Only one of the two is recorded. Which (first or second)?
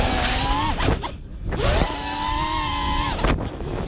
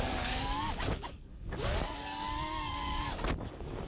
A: first